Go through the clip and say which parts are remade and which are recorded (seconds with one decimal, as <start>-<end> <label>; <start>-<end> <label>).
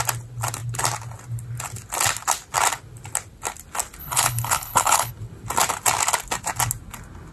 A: 0.0-4.0 recorded; 4.0-5.1 remade; 5.1-7.3 recorded